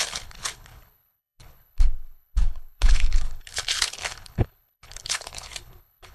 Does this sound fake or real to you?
fake